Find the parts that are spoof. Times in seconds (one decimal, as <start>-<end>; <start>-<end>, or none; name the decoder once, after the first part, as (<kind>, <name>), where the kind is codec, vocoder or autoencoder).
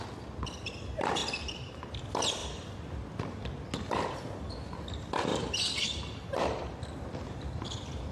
1.2-2.0 (vocoder, BigVGAN v2); 5.3-6.9